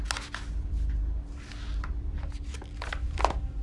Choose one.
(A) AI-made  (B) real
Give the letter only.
B